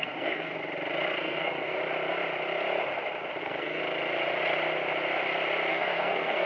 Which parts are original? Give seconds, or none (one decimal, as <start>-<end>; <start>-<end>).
0.5-1.2; 1.8-3.4; 3.8-5.7